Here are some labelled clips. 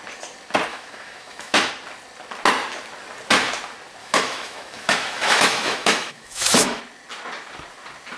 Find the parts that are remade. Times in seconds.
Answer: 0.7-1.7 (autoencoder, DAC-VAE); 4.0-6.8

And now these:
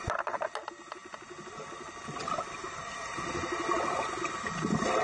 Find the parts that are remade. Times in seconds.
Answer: none

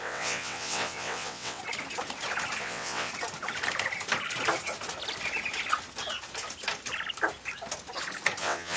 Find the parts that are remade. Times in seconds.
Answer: 0.0-1.6 (vocoder, WaveNeXt); 2.6-3.1; 8.4-8.8

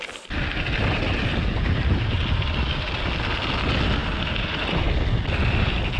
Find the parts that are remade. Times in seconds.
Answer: none

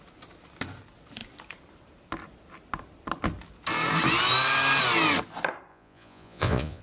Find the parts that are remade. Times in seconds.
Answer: 5.7-6.8 (vocoder, Vocos)

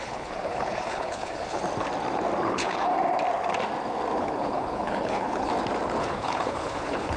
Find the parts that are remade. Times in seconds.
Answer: 0.0-1.6 (codec, HILCodec); 2.5-2.9; 4.2-5.5; 6.0-7.2